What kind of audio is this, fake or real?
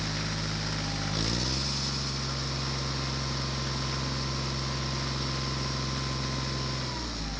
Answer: real